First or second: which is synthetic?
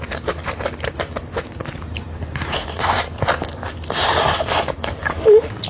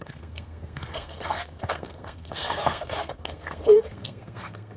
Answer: second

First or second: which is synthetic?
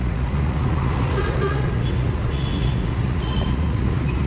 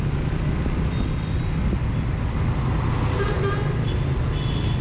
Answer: first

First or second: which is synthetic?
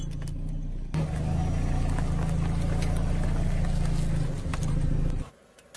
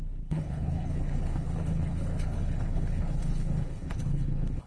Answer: second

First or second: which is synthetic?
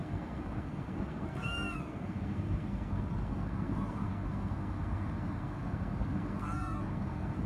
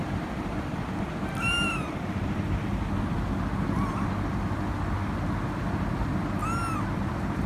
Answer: first